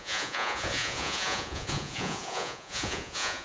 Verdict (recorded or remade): remade